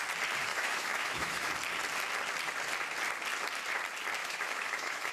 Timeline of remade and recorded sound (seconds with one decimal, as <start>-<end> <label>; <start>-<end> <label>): 0.0-0.5 recorded; 0.5-1.5 remade; 1.5-4.2 recorded; 4.2-5.1 remade